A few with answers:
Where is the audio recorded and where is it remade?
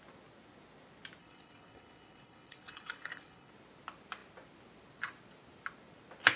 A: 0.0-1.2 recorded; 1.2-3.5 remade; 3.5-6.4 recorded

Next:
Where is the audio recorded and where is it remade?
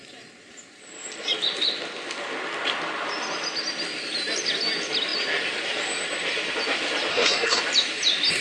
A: 0.0-7.1 recorded; 7.1-7.6 remade; 7.6-8.4 recorded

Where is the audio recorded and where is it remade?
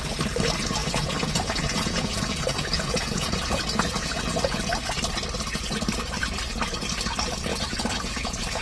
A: 0.0-0.8 recorded; 0.8-4.7 remade; 4.7-7.5 recorded; 7.5-8.6 remade